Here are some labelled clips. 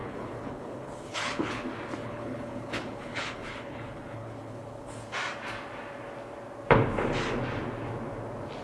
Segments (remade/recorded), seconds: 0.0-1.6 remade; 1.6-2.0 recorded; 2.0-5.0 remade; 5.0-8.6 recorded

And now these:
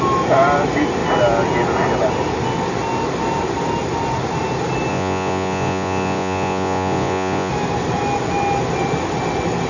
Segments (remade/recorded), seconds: 0.0-4.9 recorded; 4.9-7.5 remade; 7.5-9.7 recorded

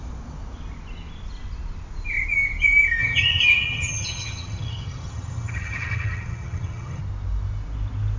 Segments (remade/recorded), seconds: 0.0-3.0 recorded; 3.0-7.0 remade; 7.0-8.2 recorded

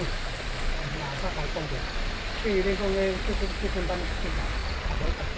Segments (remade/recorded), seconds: 0.0-4.6 recorded; 4.6-5.4 remade

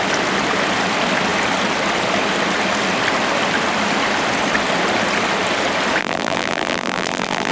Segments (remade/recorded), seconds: 0.0-6.0 recorded; 6.0-7.5 remade

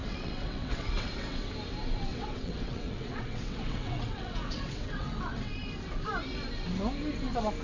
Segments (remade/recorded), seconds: 0.0-1.5 remade; 1.5-2.1 recorded; 2.1-5.5 remade; 5.5-7.6 recorded